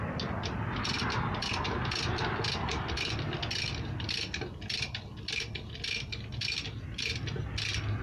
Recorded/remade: recorded